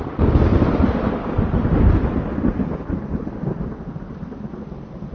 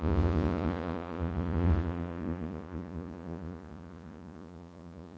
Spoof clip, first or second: second